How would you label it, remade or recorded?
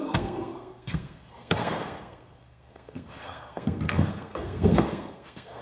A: remade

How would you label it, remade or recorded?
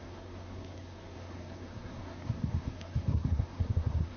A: remade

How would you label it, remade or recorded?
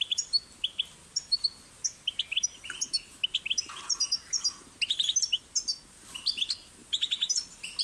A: recorded